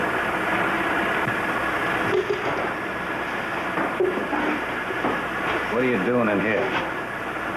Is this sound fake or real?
real